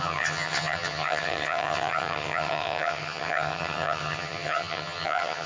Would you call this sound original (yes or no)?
no